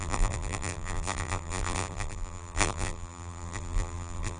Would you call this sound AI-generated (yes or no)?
yes